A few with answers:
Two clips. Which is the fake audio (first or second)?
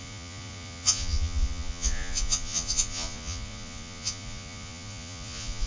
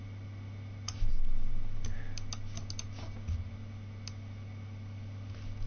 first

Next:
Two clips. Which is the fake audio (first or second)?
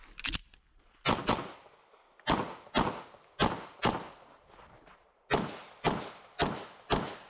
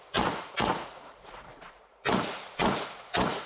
second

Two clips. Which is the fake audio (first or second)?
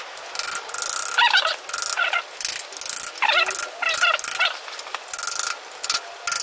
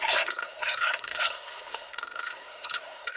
second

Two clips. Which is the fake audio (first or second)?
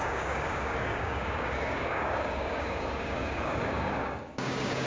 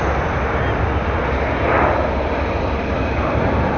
first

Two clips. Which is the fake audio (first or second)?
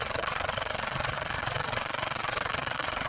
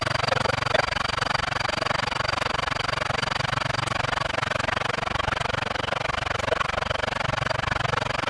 first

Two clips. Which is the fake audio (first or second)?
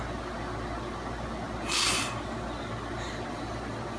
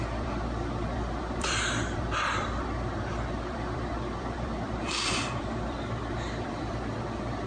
second